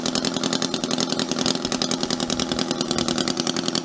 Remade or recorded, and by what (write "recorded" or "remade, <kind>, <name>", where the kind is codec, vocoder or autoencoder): recorded